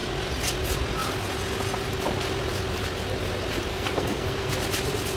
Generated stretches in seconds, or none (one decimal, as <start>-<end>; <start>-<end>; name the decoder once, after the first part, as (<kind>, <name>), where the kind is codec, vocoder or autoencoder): 3.7-4.5 (codec, SNAC)